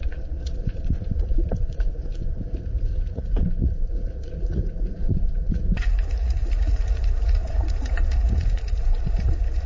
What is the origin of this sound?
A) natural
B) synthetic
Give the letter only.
B